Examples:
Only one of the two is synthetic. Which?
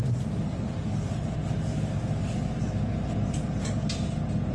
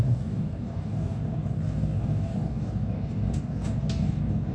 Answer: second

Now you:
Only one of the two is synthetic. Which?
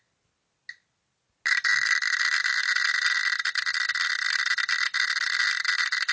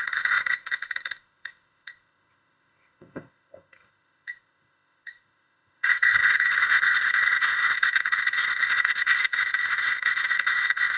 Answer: second